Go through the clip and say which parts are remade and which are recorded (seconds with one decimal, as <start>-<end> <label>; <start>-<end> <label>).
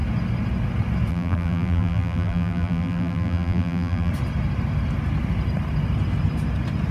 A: 0.0-1.1 recorded; 1.1-4.1 remade; 4.1-6.9 recorded